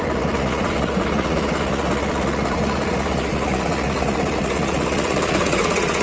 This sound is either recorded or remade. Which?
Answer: remade